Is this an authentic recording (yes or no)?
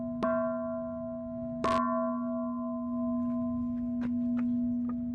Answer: yes